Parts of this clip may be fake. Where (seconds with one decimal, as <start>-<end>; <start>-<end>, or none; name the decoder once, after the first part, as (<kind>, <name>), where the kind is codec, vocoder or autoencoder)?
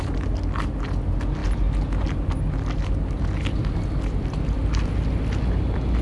none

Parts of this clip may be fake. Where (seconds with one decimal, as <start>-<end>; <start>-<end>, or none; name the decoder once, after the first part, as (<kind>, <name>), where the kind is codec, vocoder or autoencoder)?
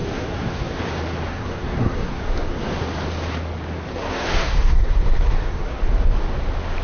0.0-0.8 (codec, SNAC); 1.3-2.7; 3.9-5.8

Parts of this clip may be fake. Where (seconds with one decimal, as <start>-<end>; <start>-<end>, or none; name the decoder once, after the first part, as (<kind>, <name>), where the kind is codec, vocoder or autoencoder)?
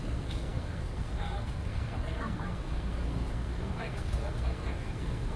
0.0-5.4 (codec, SNAC)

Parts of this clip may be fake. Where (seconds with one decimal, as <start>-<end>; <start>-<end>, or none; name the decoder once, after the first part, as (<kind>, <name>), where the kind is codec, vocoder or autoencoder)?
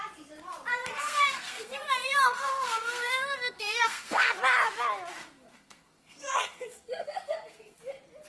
0.7-4.3 (codec, SNAC); 5.2-7.8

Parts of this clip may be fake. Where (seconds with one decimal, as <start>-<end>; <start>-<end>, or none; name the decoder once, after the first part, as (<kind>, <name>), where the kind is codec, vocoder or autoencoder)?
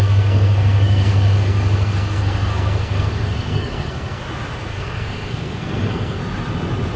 0.0-4.2 (codec, SNAC); 4.7-6.2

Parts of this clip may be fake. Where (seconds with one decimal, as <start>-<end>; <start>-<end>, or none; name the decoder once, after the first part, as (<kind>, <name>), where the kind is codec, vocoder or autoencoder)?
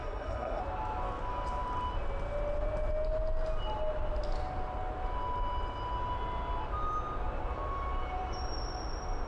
0.0-0.6 (codec, SNAC)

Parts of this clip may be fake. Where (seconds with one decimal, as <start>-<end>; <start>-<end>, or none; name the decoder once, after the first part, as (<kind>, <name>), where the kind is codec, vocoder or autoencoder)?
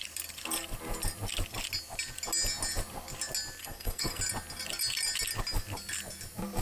3.6-4.2 (codec, SNAC)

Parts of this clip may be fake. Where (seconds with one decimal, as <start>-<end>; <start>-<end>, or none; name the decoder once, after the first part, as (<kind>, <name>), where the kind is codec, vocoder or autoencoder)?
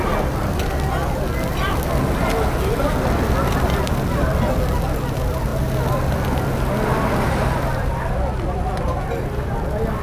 none